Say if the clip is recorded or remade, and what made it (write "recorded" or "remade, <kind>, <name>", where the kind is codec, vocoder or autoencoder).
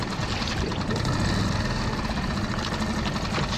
recorded